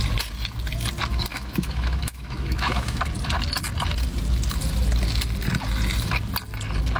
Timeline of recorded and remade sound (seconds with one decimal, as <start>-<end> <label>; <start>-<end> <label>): 0.0-1.3 recorded; 1.3-3.0 remade; 3.0-7.0 recorded